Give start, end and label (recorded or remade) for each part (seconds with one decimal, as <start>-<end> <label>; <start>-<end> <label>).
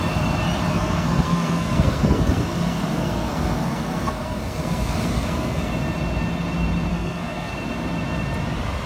0.0-0.7 recorded; 0.7-5.7 remade; 5.7-6.9 recorded; 6.9-7.5 remade; 7.5-8.9 recorded